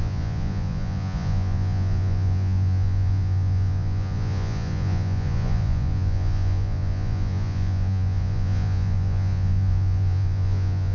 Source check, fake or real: fake